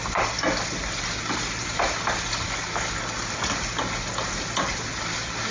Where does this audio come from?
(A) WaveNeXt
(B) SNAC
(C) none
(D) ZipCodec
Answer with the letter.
C